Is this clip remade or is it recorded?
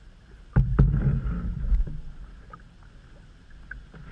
recorded